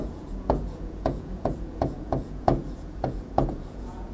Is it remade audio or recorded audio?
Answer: remade